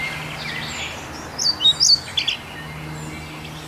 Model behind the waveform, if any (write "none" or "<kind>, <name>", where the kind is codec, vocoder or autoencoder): none